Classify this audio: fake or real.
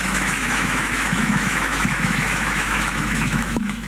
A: fake